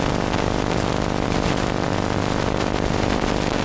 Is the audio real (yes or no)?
yes